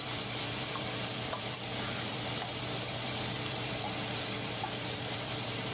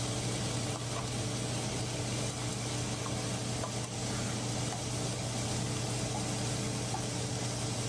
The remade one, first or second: first